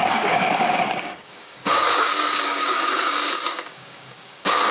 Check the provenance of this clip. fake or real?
fake